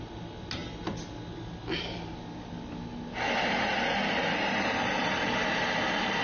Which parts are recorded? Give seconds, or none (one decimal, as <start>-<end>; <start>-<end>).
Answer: 0.0-6.2